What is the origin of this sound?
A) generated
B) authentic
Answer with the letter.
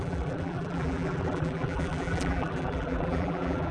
A